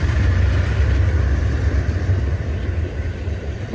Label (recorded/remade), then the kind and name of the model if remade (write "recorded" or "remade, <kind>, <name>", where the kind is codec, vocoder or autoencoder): remade, vocoder, BigVGAN v2